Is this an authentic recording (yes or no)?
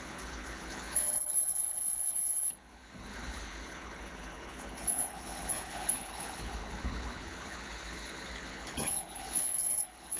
no